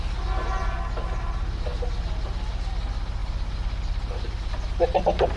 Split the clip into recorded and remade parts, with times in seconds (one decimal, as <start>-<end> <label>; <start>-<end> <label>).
0.0-5.4 recorded